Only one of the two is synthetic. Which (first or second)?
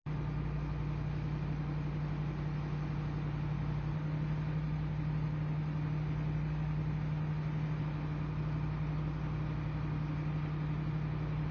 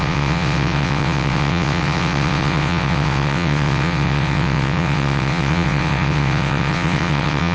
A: second